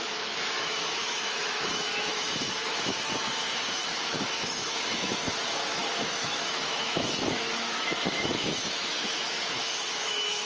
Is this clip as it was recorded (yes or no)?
no